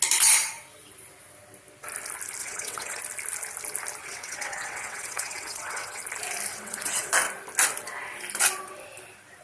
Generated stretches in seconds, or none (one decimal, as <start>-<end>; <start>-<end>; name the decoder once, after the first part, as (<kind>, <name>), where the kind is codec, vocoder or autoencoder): 2.4-3.0 (vocoder, WaveNeXt); 4.0-6.0; 6.5-7.1